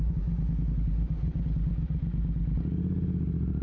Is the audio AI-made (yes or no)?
no